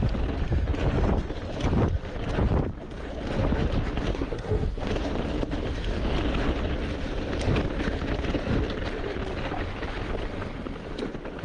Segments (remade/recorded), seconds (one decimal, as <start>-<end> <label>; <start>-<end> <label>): 0.0-4.1 recorded; 4.1-4.9 remade; 4.9-11.4 recorded